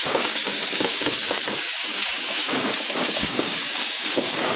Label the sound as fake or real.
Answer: fake